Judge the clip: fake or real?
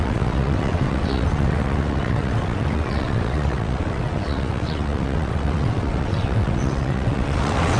fake